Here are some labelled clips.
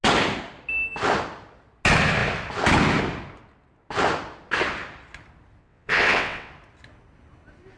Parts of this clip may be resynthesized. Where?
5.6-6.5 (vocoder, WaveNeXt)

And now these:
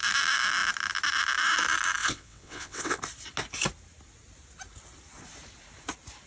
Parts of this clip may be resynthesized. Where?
2.0-3.0 (vocoder, WaveNeXt)

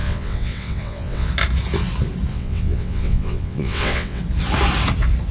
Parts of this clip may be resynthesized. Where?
0.0-1.3 (vocoder, WaveNeXt); 2.3-4.2